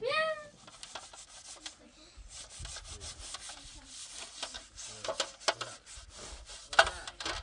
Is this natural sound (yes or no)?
yes